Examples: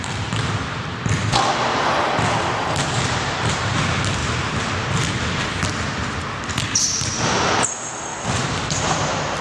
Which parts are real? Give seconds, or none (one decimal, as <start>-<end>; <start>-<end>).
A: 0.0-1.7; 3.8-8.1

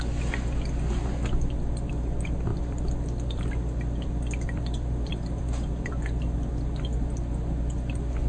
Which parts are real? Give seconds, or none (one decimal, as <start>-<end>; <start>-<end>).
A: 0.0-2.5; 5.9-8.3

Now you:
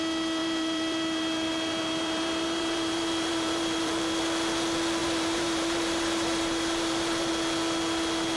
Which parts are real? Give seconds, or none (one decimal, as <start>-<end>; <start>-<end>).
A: 0.0-0.4; 4.2-5.0; 7.3-8.4

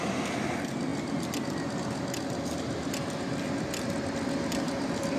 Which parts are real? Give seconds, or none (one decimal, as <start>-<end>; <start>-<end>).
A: 0.0-5.2

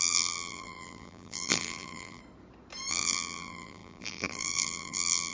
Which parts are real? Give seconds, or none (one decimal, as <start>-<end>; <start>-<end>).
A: 2.2-2.9

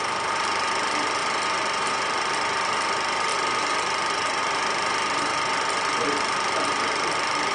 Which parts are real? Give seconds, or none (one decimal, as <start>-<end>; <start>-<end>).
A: 1.2-1.8; 3.3-4.4; 5.3-7.5

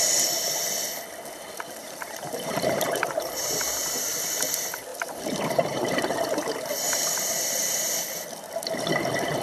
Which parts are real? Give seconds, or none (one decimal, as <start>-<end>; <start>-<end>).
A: 0.0-1.8; 3.6-4.9; 7.8-9.4

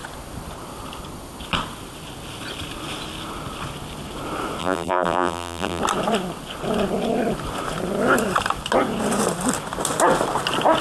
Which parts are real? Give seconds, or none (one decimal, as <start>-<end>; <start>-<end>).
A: 0.0-4.6; 5.8-10.8